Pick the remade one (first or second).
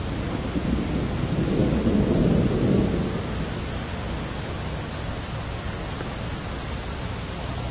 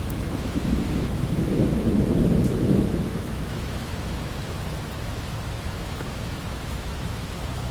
second